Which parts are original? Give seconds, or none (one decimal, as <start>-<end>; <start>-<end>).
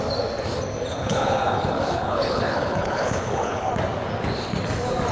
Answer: 0.0-0.9; 3.7-5.1